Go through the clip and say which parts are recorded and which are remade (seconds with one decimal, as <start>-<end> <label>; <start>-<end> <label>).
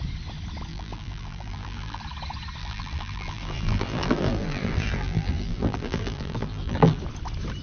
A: 0.0-0.7 recorded; 0.7-2.0 remade; 2.0-2.6 recorded; 2.6-7.0 remade; 7.0-7.6 recorded